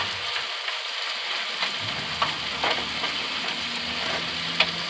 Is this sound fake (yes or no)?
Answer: no